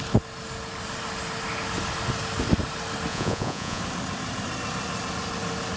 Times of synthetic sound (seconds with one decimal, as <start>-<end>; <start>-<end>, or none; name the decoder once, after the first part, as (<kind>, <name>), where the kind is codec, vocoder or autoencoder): 3.1-3.8 (vocoder, Vocos)